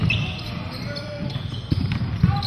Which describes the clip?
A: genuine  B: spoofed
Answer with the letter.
A